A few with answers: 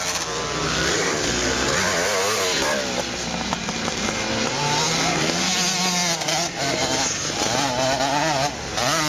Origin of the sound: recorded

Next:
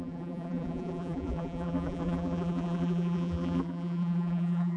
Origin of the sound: remade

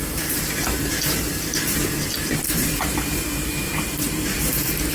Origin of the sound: remade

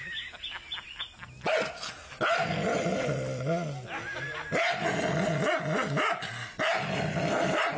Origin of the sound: recorded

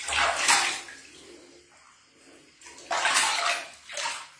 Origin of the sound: recorded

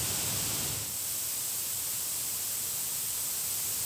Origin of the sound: remade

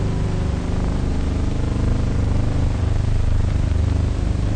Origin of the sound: remade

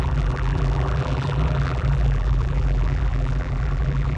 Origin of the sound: remade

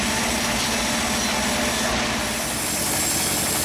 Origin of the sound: recorded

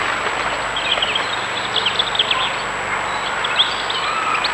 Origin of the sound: recorded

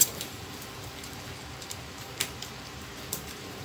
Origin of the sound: remade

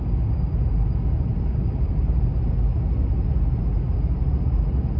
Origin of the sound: recorded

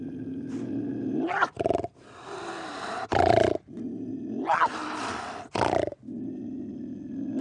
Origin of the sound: recorded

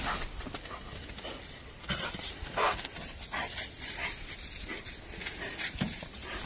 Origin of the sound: recorded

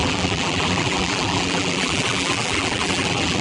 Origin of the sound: remade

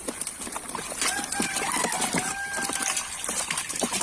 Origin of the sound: recorded